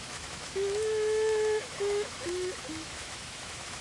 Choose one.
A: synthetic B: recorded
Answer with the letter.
A